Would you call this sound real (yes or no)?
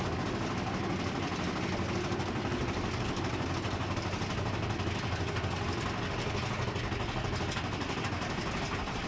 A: yes